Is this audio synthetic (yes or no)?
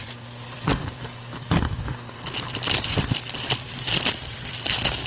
yes